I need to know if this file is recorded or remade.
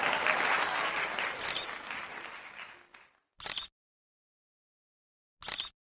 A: recorded